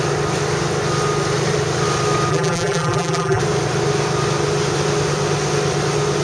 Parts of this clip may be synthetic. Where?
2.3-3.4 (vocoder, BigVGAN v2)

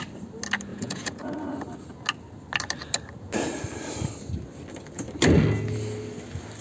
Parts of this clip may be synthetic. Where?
0.7-1.3 (vocoder, Vocos)

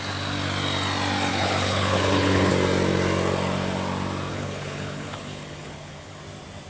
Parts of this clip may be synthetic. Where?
1.3-2.5 (codec, HILCodec); 4.3-6.2

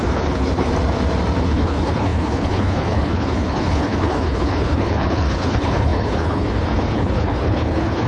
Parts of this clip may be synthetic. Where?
0.0-0.7 (codec, HILCodec); 1.4-8.1

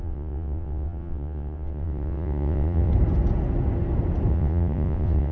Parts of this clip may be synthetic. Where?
0.0-2.9 (vocoder, WaveNeXt); 4.3-5.3

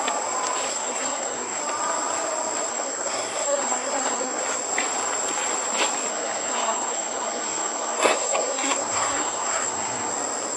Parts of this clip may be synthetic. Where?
0.7-1.6 (codec, SNAC); 2.7-4.4; 6.1-10.1

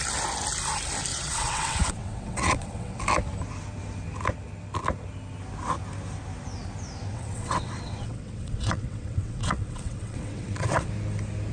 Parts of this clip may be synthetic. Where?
1.1-3.0 (vocoder, WaveNeXt); 7.1-10.9

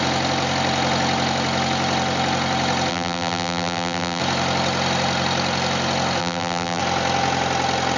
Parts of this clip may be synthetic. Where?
2.9-4.2 (vocoder, BigVGAN v2); 6.2-6.8